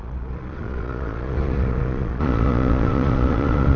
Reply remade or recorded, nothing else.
remade